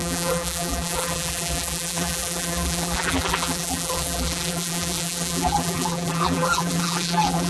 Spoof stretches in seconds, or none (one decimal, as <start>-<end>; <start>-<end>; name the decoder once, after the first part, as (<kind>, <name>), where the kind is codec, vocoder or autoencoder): 0.0-7.5 (vocoder, BigVGAN v2)